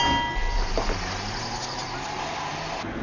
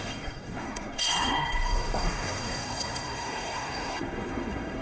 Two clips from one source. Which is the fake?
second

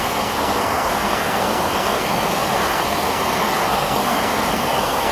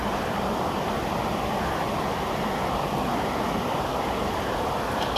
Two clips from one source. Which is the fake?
first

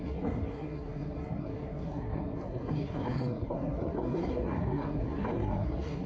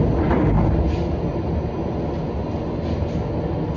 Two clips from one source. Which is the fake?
first